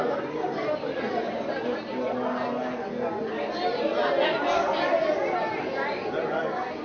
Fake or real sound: real